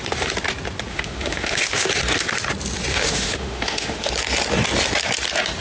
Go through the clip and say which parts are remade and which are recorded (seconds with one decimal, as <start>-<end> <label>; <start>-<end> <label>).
0.0-0.9 recorded; 0.9-1.9 remade; 1.9-2.9 recorded; 2.9-4.1 remade; 4.1-5.6 recorded